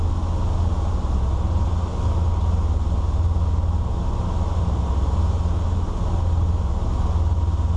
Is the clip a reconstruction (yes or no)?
no